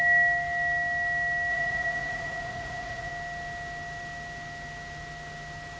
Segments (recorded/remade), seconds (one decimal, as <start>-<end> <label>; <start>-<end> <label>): 0.0-1.5 recorded; 1.5-3.1 remade; 3.1-5.8 recorded